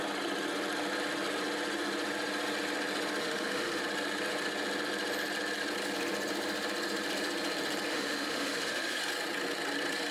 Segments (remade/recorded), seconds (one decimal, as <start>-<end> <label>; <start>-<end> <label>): 0.0-3.2 recorded; 3.2-3.8 remade; 3.8-7.9 recorded; 7.9-9.0 remade; 9.0-10.1 recorded